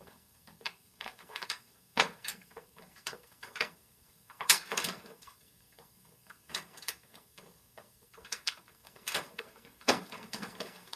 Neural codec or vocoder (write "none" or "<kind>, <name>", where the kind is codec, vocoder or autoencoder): codec, SNAC